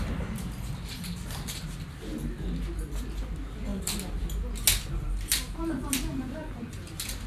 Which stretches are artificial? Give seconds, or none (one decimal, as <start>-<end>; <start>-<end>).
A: none